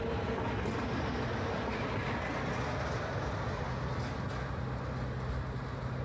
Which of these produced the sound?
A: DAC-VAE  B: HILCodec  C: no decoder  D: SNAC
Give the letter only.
C